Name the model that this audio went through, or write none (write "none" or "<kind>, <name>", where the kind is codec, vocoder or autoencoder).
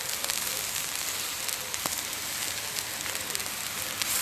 none